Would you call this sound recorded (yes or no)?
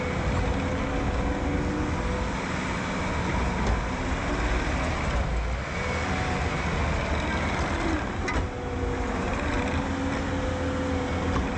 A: yes